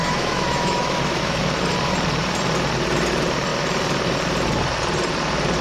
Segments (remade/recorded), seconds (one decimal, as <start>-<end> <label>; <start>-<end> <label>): 0.0-1.4 remade; 1.4-5.6 recorded